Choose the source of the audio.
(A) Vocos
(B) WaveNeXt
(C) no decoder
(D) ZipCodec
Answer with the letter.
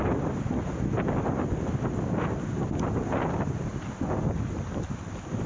C